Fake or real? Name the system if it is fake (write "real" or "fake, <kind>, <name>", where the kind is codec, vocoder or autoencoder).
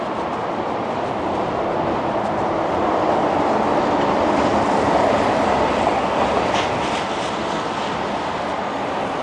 real